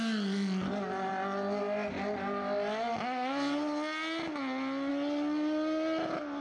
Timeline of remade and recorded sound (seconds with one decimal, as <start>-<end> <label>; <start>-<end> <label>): 0.0-6.4 recorded